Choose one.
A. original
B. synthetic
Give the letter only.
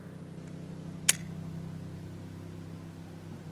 A